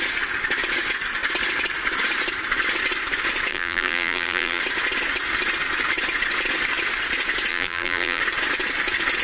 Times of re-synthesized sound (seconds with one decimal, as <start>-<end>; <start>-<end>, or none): 3.5-4.6; 7.5-8.2